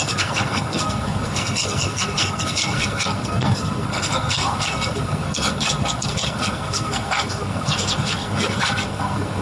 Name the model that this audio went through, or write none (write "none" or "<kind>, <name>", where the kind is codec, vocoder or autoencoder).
codec, SNAC